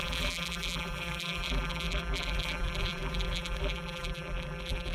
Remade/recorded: remade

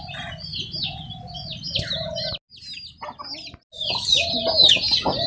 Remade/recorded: recorded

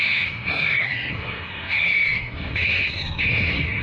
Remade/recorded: remade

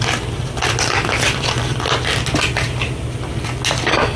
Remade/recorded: recorded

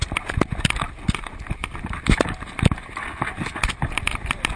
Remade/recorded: recorded